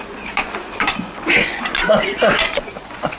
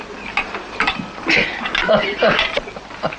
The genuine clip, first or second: second